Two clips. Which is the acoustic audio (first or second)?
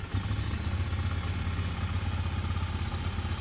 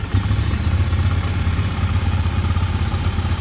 first